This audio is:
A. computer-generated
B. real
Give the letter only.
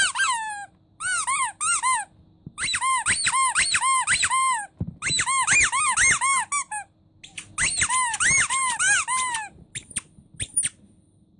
B